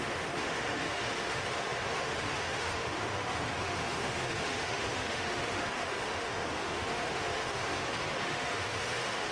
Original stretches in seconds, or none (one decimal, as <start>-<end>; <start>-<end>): none